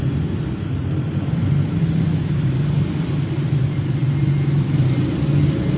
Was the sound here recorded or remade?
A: recorded